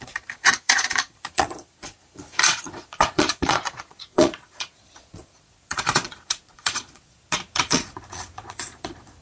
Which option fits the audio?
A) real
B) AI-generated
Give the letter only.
B